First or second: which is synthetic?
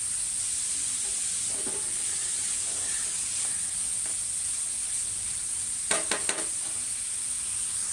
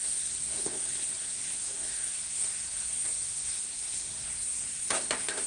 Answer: second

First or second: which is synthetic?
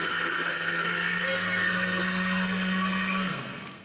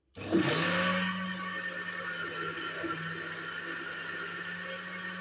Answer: first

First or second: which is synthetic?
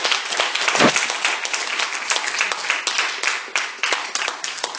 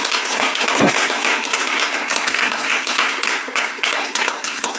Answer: second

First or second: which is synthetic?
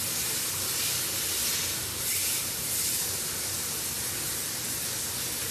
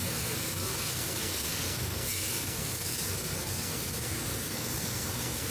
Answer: second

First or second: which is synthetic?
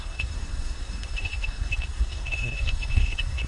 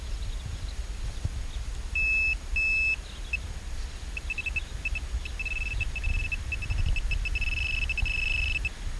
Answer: first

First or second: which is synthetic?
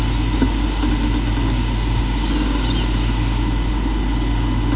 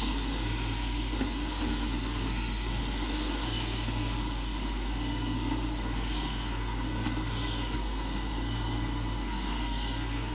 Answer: second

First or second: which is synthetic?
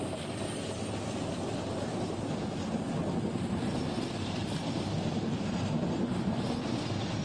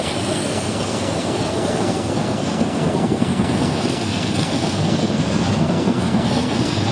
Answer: second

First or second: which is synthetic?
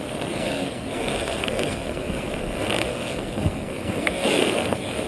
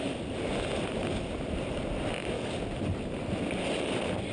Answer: first